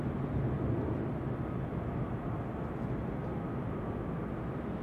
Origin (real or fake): real